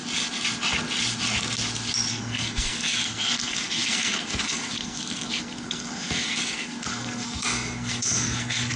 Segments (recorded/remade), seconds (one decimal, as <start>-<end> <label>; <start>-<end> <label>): 0.0-2.1 recorded; 2.1-8.8 remade